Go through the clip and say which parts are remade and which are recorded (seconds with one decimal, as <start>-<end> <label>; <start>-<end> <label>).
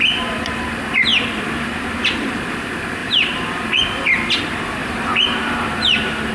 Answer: 0.0-3.0 recorded; 3.0-3.7 remade; 3.7-4.8 recorded; 4.8-6.3 remade